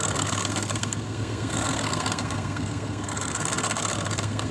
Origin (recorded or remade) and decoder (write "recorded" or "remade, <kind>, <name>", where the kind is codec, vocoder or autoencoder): remade, codec, SNAC